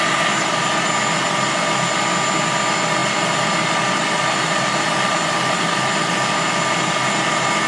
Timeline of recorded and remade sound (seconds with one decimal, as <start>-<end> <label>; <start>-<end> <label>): 0.0-7.7 recorded